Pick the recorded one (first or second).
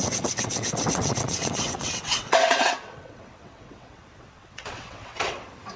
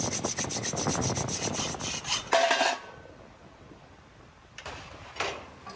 second